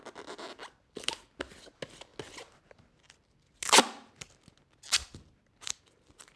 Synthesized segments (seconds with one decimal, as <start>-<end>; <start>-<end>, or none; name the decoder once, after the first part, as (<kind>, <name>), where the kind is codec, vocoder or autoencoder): none